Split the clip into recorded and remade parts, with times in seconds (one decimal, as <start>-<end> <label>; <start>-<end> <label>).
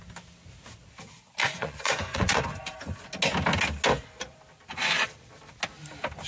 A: 0.0-1.4 recorded; 1.4-2.4 remade; 2.4-6.3 recorded